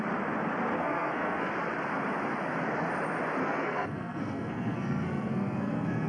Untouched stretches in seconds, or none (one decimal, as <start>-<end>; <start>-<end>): 0.0-0.8; 1.5-3.4